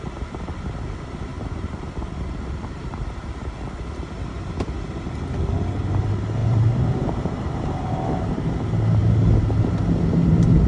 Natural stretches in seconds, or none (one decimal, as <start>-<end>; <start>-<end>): 0.0-1.3; 3.3-6.4; 8.5-10.7